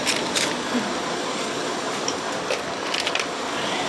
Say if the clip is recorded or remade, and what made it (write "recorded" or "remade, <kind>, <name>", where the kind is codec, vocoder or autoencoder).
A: recorded